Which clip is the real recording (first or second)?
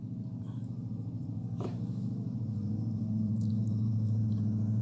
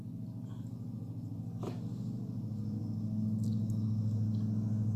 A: second